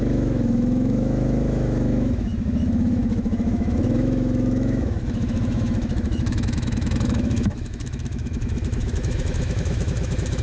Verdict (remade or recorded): remade